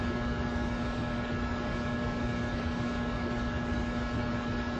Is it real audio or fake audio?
fake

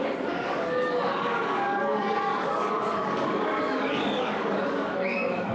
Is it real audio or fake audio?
fake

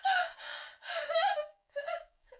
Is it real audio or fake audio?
fake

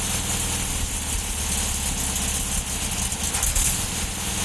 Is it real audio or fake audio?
real